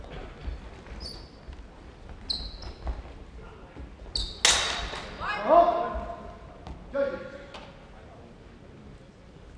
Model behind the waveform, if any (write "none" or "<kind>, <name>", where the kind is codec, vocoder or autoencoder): none